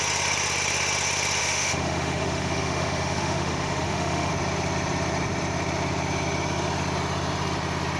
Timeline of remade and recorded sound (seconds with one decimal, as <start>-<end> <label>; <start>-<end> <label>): 0.0-1.4 recorded; 1.4-4.3 remade; 4.3-8.0 recorded